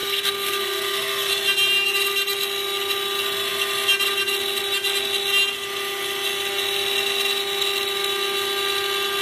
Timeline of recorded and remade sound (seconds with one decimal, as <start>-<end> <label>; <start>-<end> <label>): 0.0-1.3 remade; 1.3-9.2 recorded